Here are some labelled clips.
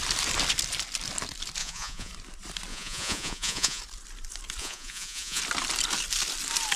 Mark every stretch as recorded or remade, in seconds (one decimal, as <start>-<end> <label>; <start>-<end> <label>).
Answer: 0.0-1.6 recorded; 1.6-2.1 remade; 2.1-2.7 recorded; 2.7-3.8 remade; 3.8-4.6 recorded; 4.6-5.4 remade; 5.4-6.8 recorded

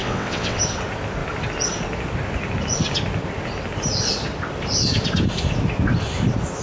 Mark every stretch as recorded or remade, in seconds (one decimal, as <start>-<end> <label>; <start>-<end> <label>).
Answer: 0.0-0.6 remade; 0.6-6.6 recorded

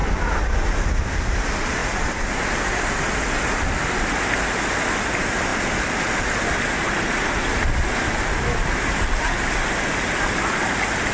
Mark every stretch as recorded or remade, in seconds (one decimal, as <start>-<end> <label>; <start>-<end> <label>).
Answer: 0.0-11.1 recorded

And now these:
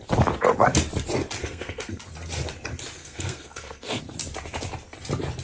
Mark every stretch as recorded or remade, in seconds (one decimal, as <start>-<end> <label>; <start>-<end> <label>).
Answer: 0.0-1.4 recorded; 1.4-2.0 remade; 2.0-3.0 recorded; 3.0-4.0 remade; 4.0-5.4 recorded

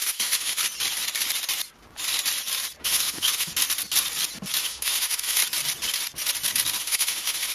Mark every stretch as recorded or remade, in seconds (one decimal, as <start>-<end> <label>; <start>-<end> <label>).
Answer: 0.0-0.6 remade; 0.6-2.8 recorded; 2.8-3.5 remade; 3.5-4.6 recorded; 4.6-5.4 remade; 5.4-6.8 recorded; 6.8-7.5 remade